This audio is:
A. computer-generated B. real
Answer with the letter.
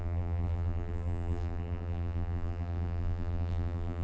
A